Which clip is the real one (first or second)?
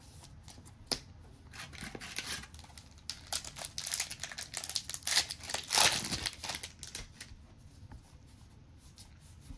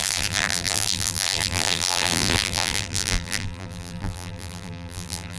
first